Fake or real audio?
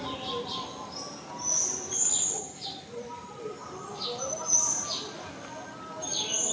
real